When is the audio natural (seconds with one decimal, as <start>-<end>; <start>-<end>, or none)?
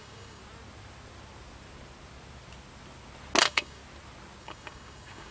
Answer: 0.4-3.4; 3.8-4.4